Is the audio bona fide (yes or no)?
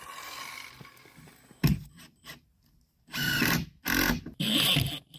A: yes